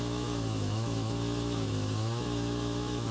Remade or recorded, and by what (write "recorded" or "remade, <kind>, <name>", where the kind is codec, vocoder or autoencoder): remade, autoencoder, DAC-VAE